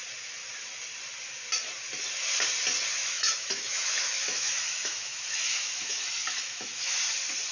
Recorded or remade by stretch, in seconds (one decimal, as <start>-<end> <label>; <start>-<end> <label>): 0.0-3.0 recorded; 3.0-7.0 remade; 7.0-7.5 recorded